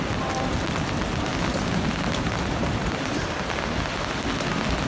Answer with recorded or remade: recorded